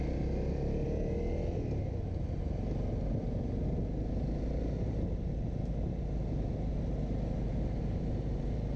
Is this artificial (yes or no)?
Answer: no